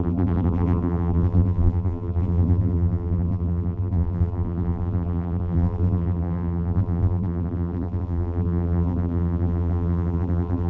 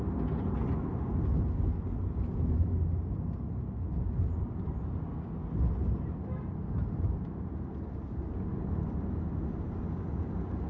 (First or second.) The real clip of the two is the second